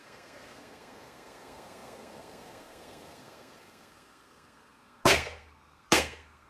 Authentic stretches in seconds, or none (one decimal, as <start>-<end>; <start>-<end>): none